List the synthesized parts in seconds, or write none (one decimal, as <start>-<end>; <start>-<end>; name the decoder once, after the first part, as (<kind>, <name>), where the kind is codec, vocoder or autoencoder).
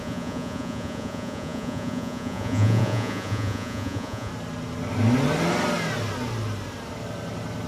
0.0-4.3 (vocoder, Vocos)